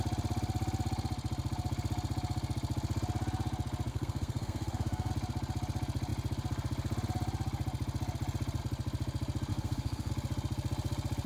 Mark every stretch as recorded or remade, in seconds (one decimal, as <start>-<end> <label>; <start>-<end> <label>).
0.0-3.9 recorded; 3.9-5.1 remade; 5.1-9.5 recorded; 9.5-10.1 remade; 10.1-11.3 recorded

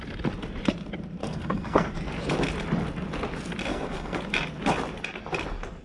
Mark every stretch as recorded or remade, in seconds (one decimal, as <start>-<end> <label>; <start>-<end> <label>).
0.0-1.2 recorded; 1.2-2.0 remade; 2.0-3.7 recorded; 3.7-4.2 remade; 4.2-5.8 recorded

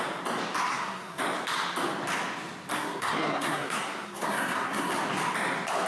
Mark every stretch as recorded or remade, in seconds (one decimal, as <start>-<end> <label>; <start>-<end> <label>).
0.0-0.7 recorded; 0.7-1.2 remade; 1.2-2.7 recorded; 2.7-4.9 remade; 4.9-5.9 recorded

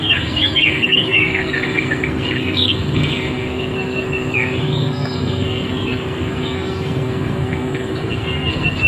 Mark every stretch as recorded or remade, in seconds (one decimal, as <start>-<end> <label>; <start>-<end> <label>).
0.0-8.9 remade